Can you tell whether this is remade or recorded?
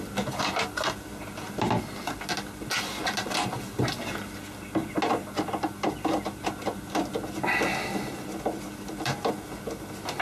recorded